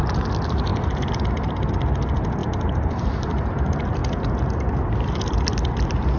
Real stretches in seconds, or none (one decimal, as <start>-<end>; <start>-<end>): 0.0-2.4; 3.5-6.2

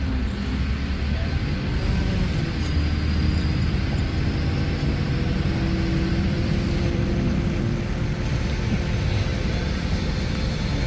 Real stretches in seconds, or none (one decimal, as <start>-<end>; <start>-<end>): 0.0-6.1; 7.1-9.3; 10.3-10.9

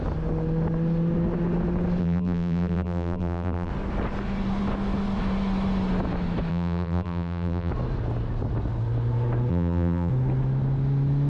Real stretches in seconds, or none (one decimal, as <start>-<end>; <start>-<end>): 0.0-2.0; 3.7-6.5; 7.7-9.5; 10.1-11.3